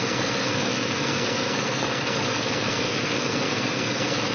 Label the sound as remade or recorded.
remade